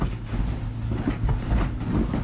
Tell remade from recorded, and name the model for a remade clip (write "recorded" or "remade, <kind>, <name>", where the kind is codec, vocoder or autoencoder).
recorded